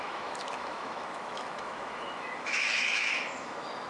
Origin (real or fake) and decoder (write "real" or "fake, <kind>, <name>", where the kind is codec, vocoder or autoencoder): fake, autoencoder, DAC-VAE